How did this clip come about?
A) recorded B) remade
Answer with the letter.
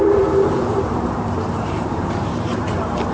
B